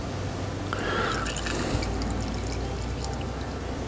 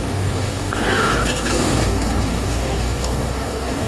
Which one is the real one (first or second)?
first